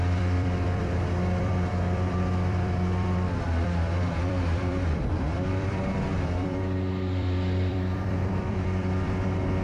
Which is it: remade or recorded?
remade